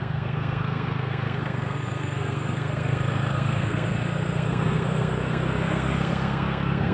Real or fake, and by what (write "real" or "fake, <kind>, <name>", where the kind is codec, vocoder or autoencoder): fake, codec, SNAC